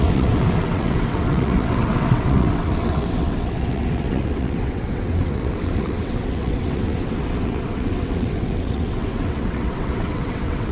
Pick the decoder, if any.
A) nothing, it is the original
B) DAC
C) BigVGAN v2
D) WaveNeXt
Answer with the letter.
D